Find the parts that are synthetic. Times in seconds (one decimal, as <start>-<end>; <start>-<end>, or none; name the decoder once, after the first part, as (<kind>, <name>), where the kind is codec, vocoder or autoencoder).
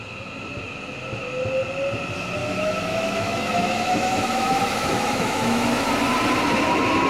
2.4-5.9 (autoencoder, DAC-VAE)